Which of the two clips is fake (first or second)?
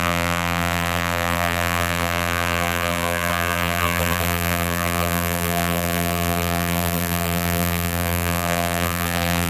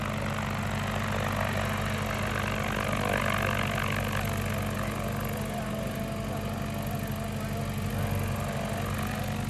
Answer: first